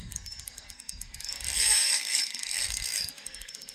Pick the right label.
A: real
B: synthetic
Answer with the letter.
B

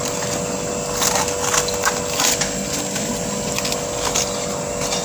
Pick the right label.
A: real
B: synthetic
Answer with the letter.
A